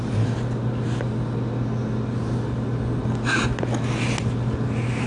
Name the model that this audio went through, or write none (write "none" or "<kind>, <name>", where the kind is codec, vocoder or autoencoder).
none